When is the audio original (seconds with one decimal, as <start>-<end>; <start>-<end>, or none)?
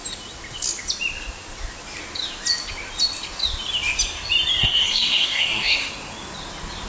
0.0-4.6; 5.9-6.9